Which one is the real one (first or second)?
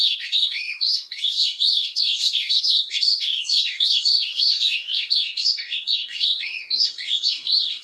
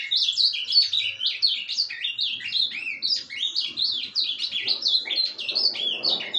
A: second